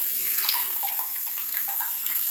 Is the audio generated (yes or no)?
yes